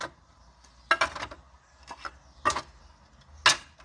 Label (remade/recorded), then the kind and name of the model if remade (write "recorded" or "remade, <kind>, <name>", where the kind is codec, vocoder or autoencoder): recorded